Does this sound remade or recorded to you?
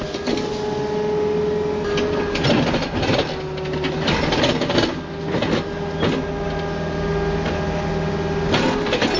recorded